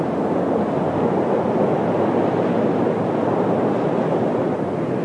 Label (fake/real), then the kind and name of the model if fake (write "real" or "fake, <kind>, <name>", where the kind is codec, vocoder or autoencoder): real